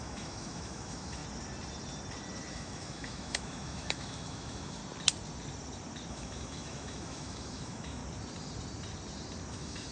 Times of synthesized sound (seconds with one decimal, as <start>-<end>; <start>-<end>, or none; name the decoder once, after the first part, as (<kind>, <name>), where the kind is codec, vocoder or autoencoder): 0.0-1.2 (autoencoder, DAC-VAE); 2.5-4.8; 6.1-8.0; 9.5-9.9